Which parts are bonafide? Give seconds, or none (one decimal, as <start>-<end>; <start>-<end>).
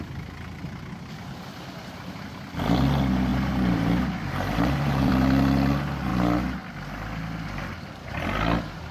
0.0-3.3; 5.1-8.9